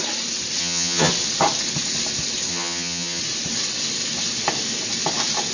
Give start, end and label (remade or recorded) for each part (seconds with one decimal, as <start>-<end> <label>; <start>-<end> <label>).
0.0-0.6 recorded; 0.6-1.1 remade; 1.1-2.5 recorded; 2.5-3.2 remade; 3.2-5.5 recorded